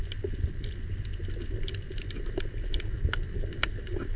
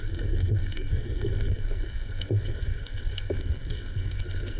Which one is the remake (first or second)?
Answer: second